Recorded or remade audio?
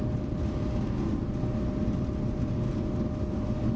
recorded